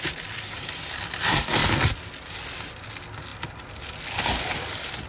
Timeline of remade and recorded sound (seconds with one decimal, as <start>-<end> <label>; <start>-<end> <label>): 0.0-5.1 recorded